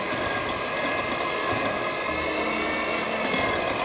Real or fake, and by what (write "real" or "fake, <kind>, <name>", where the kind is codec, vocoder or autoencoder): real